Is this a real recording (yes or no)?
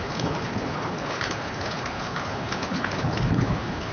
no